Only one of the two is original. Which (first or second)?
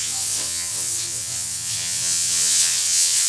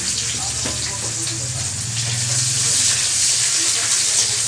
second